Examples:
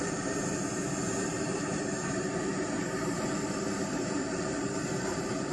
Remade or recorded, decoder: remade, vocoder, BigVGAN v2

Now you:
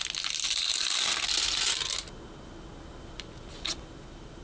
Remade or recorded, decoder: recorded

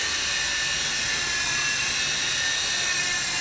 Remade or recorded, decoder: recorded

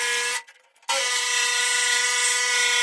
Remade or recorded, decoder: recorded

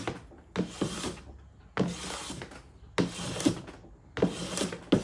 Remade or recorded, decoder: recorded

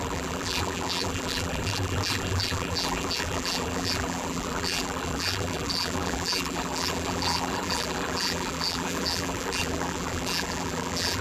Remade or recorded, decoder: remade, vocoder, BigVGAN v2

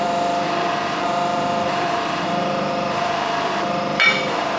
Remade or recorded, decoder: remade, vocoder, BigVGAN v2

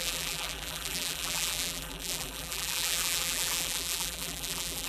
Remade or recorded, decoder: remade, vocoder, BigVGAN v2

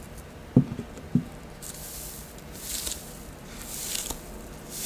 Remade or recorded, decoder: remade, vocoder, BigVGAN v2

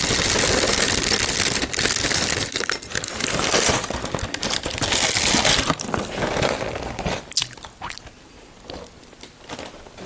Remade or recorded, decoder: recorded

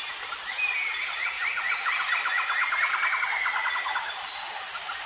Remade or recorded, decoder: recorded